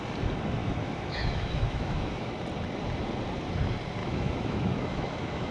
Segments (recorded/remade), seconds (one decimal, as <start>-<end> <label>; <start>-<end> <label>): 0.0-0.6 recorded; 0.6-2.3 remade; 2.3-4.0 recorded; 4.0-5.5 remade